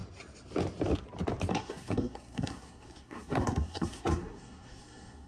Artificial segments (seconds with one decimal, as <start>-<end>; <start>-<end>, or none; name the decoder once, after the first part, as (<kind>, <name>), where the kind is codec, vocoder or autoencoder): 1.5-5.3 (codec, SNAC)